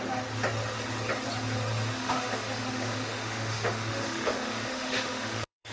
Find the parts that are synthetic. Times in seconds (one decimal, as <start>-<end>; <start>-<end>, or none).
2.0-5.7